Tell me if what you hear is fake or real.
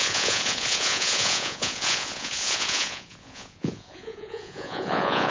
fake